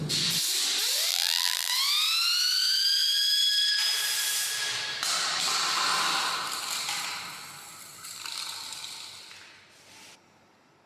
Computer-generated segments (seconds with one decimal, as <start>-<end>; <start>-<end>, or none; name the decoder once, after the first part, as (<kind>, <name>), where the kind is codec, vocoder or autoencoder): 1.1-1.7 (vocoder, BigVGAN v2)